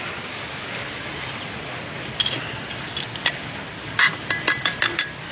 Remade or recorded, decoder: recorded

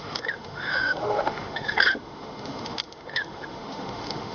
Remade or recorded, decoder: remade, autoencoder, DAC-VAE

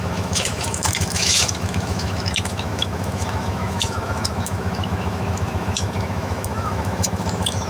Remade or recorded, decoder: remade, autoencoder, DAC-VAE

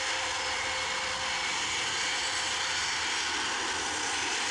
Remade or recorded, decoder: recorded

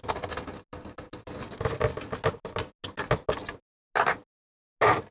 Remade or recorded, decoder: recorded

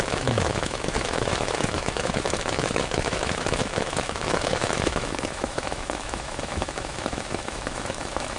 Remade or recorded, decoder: remade, autoencoder, DAC-VAE